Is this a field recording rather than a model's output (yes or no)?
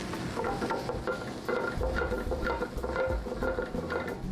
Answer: yes